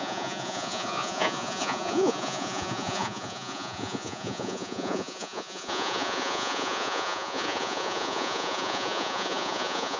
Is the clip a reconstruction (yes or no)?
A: yes